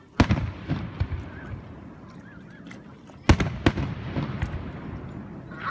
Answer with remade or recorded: recorded